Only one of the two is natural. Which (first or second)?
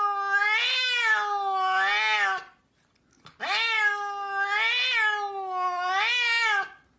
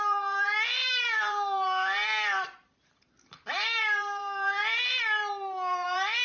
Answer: first